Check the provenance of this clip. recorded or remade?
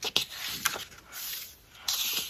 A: recorded